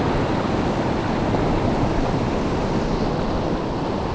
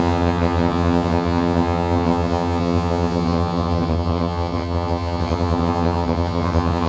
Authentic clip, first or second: first